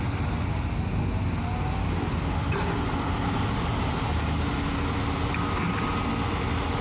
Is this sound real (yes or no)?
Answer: yes